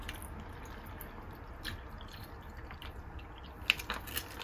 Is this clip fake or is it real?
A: real